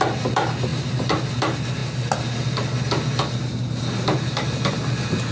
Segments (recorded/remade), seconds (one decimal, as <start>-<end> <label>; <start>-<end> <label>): 0.0-5.3 recorded